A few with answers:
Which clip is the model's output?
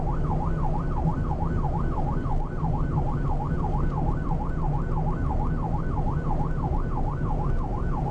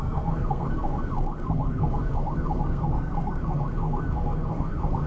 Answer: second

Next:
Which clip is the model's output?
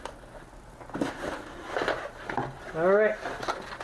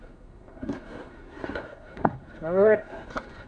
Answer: second